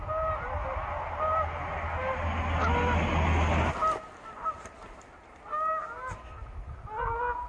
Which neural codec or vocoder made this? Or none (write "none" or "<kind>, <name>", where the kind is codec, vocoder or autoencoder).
none